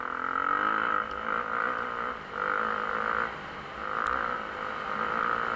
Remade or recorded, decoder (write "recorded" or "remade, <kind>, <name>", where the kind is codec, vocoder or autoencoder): recorded